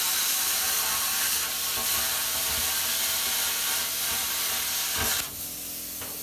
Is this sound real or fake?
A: real